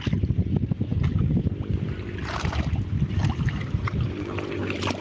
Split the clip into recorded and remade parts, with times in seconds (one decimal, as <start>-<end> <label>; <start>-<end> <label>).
0.0-5.0 recorded